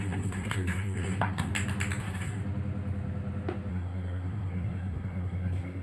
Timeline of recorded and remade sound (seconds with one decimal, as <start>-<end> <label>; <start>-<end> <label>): 0.0-1.5 remade; 1.5-2.0 recorded; 2.0-2.4 remade; 2.4-3.7 recorded; 3.7-5.8 remade